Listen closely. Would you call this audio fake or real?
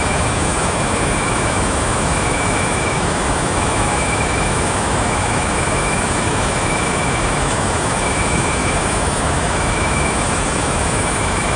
fake